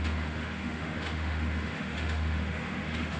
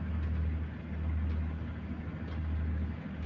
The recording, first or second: second